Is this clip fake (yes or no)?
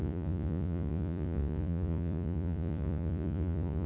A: yes